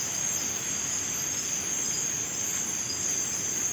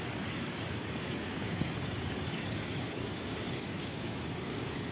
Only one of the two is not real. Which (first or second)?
second